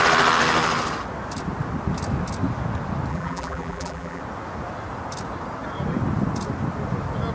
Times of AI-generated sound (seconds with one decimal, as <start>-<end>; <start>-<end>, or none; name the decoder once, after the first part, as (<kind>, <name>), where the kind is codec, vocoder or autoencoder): 3.1-4.2 (vocoder, BigVGAN v2)